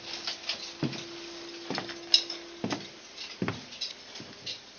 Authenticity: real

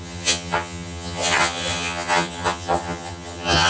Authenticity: fake